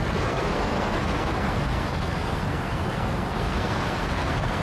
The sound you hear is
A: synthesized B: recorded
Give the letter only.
A